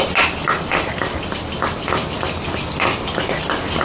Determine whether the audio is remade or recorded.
recorded